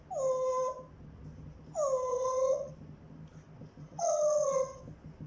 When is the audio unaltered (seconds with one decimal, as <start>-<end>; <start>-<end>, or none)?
0.0-2.1; 2.7-3.8; 4.8-5.3